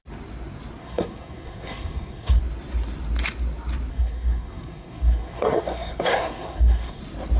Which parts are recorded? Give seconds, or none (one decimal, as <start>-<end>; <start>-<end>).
0.0-0.8; 2.4-3.9; 7.0-7.4